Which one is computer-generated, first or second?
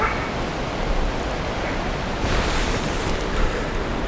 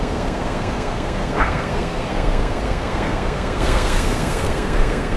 second